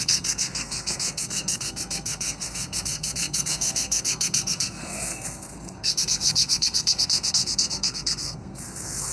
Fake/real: fake